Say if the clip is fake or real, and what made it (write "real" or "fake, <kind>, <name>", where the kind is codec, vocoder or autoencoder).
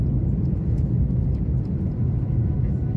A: real